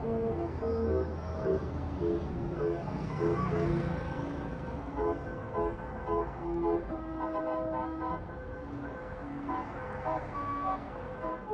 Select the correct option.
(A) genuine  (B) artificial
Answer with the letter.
B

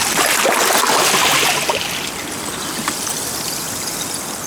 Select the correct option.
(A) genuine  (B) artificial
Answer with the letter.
A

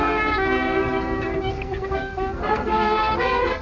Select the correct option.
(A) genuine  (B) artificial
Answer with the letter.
B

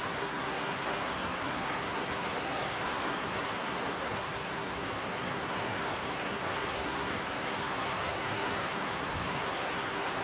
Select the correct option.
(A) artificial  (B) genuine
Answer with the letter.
A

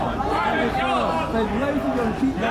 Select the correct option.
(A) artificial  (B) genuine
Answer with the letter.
B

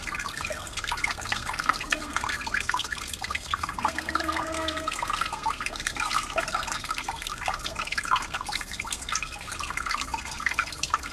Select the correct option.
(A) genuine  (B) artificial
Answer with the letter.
B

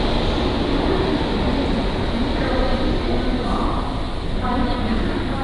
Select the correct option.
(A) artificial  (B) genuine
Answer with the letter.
B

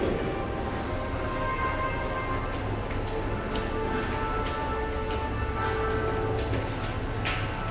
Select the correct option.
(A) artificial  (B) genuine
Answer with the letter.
B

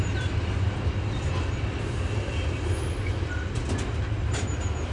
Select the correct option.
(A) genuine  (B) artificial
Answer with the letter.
A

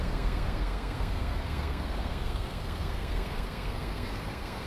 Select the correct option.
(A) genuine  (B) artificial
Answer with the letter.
B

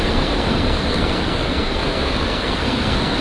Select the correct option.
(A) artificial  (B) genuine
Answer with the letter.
A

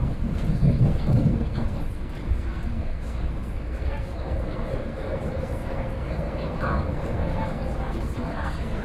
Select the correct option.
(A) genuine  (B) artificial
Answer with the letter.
B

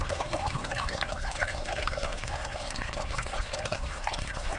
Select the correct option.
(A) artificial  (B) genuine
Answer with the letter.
A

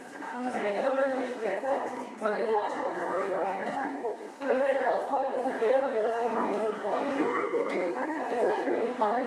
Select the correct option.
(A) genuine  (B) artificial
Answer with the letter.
B